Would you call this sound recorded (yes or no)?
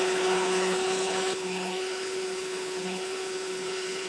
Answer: no